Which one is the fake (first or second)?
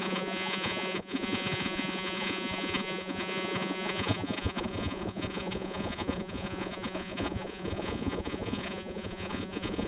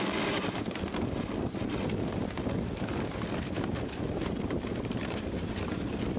first